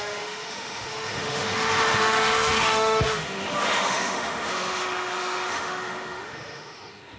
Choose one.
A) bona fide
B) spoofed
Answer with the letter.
B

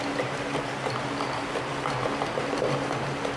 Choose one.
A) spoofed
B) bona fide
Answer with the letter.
B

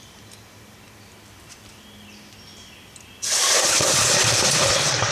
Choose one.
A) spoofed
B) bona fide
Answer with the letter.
B